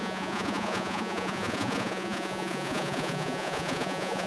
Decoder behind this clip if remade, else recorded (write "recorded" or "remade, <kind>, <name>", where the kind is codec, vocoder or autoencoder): remade, vocoder, Vocos